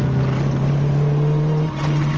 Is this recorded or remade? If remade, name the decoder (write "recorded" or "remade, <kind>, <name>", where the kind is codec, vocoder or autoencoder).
recorded